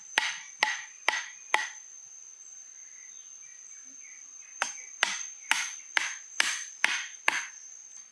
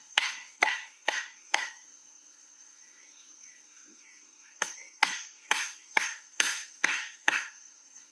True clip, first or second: first